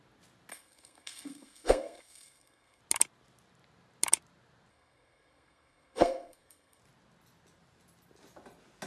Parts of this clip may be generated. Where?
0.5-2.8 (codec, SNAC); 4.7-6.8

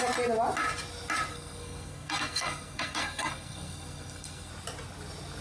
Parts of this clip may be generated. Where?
1.3-4.5 (codec, SNAC)

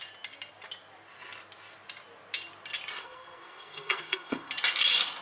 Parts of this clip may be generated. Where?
3.0-4.5 (codec, SNAC)

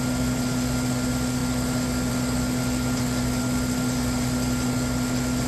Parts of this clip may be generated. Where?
none

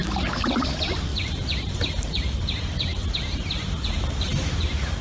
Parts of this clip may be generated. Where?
none

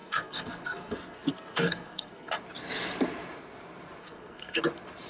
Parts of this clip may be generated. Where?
0.0-2.3 (codec, SNAC); 4.0-4.6